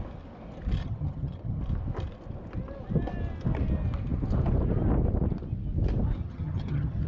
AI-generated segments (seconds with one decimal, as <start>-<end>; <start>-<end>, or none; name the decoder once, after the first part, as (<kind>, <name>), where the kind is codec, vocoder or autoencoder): 0.8-1.6 (vocoder, HiFi-GAN); 6.2-7.1